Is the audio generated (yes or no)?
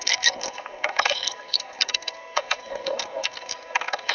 yes